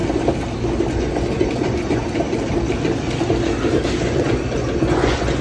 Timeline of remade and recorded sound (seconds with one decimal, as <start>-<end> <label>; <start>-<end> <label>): 0.0-0.9 recorded; 0.9-2.0 remade; 2.0-4.0 recorded; 4.0-5.4 remade